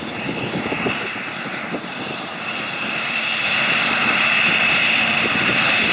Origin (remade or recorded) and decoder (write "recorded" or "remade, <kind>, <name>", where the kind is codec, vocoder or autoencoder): remade, vocoder, BigVGAN v2